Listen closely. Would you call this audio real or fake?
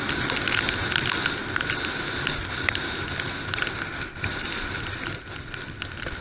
real